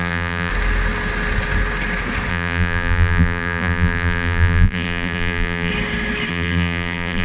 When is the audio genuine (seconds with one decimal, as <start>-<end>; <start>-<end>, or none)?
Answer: 0.5-2.3; 5.7-6.3